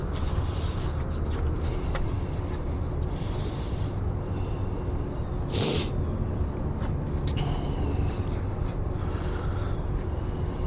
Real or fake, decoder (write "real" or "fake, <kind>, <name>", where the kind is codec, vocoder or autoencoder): real